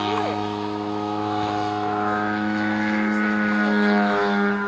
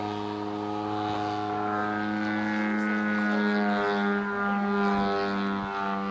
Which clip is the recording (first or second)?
second